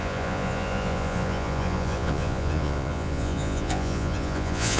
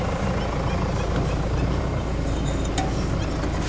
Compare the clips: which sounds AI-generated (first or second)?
first